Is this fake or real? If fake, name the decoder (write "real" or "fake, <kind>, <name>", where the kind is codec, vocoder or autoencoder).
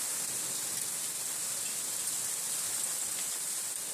real